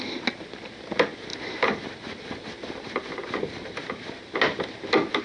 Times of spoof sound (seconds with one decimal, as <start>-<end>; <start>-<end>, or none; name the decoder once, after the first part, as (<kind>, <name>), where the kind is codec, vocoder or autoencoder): 1.3-4.4 (vocoder, BigVGAN v2)